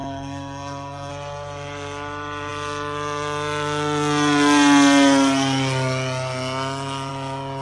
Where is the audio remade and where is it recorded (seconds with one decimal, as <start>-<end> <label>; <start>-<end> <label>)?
0.0-1.1 remade; 1.1-7.6 recorded